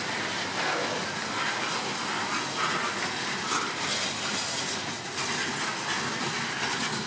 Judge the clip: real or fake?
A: real